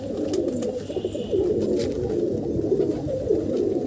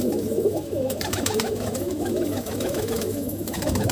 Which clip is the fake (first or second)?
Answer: second